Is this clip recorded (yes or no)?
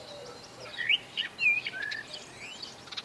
yes